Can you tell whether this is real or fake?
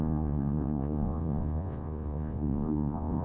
fake